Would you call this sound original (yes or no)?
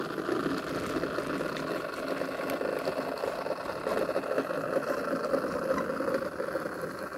yes